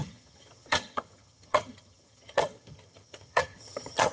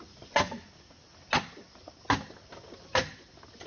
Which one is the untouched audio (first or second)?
second